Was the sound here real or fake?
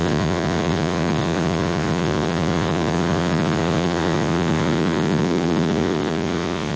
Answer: fake